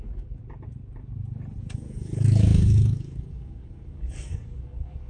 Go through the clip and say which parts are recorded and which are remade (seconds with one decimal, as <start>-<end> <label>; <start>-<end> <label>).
0.0-0.4 remade; 0.4-1.6 recorded; 1.6-5.1 remade

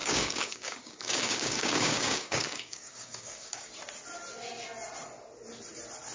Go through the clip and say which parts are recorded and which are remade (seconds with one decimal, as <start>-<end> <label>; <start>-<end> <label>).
0.0-3.7 remade; 3.7-6.1 recorded

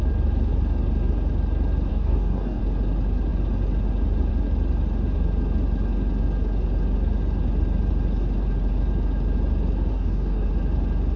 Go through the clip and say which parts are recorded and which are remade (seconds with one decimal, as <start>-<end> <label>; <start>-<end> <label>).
0.0-1.9 recorded; 1.9-2.6 remade; 2.6-9.9 recorded; 9.9-10.5 remade; 10.5-11.2 recorded

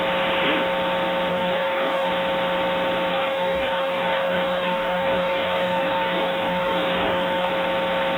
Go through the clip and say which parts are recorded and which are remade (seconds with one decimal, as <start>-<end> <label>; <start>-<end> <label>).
0.0-1.3 recorded; 1.3-2.1 remade; 2.1-3.1 recorded; 3.1-7.5 remade; 7.5-8.2 recorded